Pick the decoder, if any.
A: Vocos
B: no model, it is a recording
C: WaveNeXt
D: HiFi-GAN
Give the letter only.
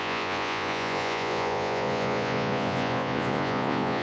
A